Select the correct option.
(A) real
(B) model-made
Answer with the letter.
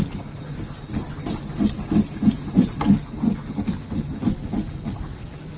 A